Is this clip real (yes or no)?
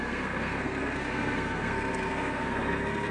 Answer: no